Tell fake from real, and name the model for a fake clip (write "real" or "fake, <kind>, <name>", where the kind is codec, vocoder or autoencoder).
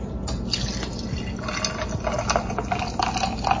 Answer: real